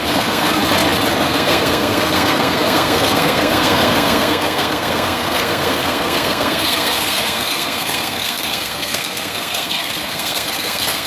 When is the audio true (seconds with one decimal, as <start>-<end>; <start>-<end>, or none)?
0.6-1.2